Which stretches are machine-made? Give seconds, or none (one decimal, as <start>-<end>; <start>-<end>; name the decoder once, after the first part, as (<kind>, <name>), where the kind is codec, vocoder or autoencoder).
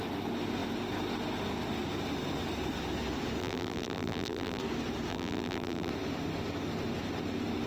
3.4-4.6 (vocoder, BigVGAN v2); 5.1-5.9